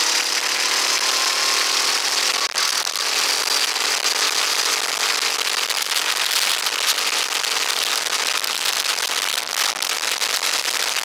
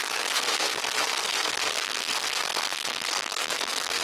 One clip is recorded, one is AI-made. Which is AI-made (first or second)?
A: second